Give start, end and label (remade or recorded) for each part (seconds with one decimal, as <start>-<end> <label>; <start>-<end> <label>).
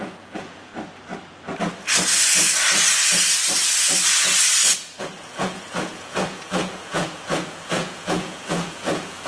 0.0-0.7 remade; 0.7-5.0 recorded; 5.0-9.3 remade